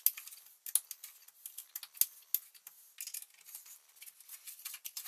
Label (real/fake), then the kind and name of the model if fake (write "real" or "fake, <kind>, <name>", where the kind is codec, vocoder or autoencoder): real